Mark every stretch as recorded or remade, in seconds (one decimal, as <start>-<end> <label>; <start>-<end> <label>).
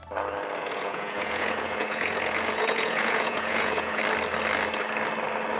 0.0-0.6 recorded; 0.6-4.0 remade; 4.0-5.6 recorded